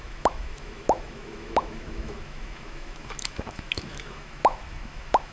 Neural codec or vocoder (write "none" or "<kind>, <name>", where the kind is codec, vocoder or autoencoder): autoencoder, DAC-VAE